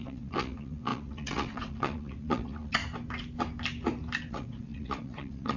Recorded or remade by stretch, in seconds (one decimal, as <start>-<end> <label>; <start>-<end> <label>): 0.0-2.8 remade; 2.8-4.3 recorded; 4.3-5.6 remade